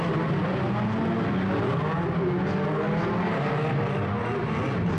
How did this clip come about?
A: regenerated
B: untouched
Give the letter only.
B